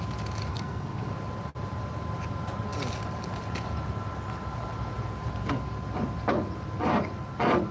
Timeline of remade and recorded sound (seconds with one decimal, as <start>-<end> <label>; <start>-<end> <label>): 0.0-0.5 recorded; 0.5-1.1 remade; 1.1-7.7 recorded